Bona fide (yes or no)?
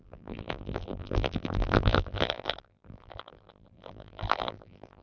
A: no